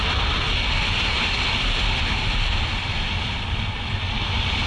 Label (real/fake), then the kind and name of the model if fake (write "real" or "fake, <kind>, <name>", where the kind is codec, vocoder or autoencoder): real